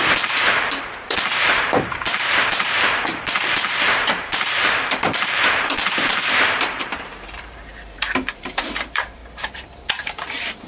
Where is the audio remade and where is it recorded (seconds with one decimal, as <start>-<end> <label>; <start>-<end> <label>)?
0.0-9.2 remade; 9.2-9.9 recorded; 9.9-10.7 remade